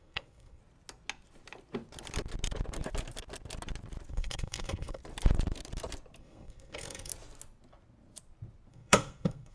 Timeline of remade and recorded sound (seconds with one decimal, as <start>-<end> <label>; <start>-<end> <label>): 0.0-0.6 remade; 0.6-4.1 recorded; 4.1-5.0 remade; 5.0-6.2 recorded; 6.2-7.1 remade; 7.1-8.7 recorded; 8.7-9.5 remade